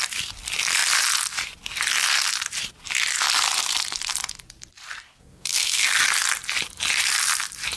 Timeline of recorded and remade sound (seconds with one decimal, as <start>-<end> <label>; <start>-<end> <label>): 0.0-5.1 recorded; 5.1-5.9 remade; 5.9-7.8 recorded